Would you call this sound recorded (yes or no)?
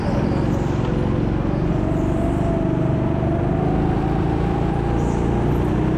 yes